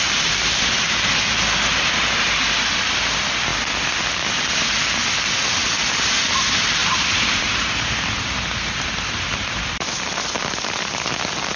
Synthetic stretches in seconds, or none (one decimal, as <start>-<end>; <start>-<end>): 1.7-2.3; 6.8-10.3